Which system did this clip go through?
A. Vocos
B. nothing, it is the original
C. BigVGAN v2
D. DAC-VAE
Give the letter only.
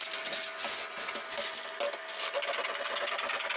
B